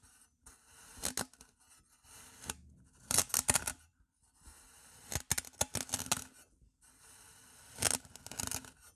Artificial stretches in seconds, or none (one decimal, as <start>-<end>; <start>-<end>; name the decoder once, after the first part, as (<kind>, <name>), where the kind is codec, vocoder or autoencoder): none